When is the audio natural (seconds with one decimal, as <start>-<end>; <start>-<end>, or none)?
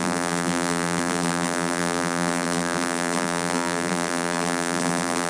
none